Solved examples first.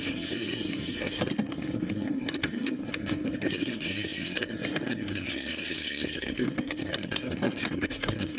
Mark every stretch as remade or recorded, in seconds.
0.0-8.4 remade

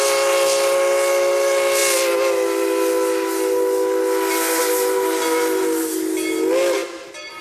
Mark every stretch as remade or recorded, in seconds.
0.0-7.4 recorded

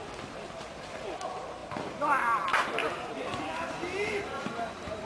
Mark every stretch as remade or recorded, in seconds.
0.0-5.1 remade

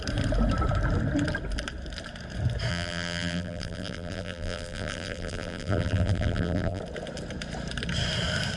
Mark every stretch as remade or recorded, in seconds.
0.0-2.7 recorded; 2.7-6.8 remade; 6.8-8.6 recorded

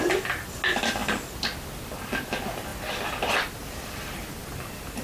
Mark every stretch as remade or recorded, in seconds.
0.0-5.0 recorded

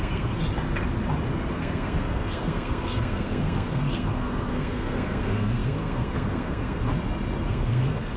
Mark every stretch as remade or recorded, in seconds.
0.0-0.4 remade; 0.4-1.5 recorded; 1.5-6.9 remade; 6.9-7.5 recorded; 7.5-8.2 remade